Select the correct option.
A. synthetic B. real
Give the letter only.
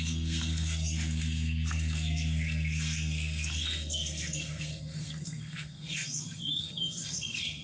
A